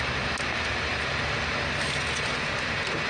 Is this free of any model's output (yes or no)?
yes